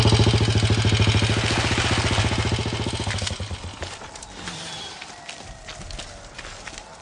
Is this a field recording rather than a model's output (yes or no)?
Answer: yes